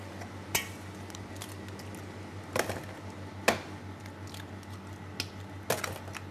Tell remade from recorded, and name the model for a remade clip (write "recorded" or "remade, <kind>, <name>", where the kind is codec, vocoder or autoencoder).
recorded